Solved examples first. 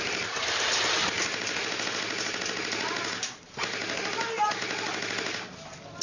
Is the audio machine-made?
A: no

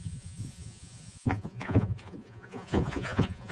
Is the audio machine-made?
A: yes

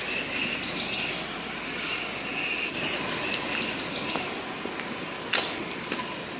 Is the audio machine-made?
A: no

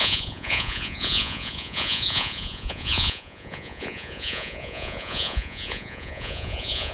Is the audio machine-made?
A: yes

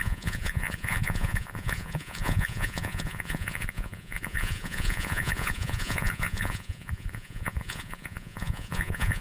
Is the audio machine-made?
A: yes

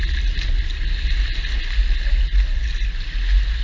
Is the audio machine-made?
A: no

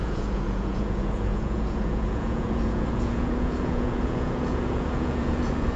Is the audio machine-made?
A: yes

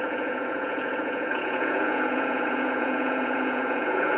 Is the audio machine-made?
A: yes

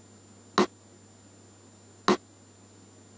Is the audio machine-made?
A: no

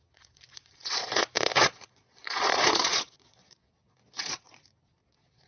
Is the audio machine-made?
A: yes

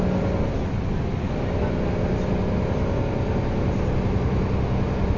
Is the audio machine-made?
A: no